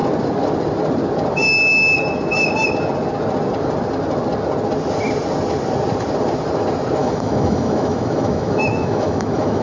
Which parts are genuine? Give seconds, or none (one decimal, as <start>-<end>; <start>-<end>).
0.0-7.0